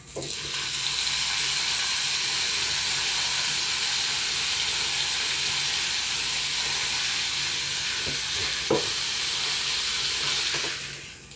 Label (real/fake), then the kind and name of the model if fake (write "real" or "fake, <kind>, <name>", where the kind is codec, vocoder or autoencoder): real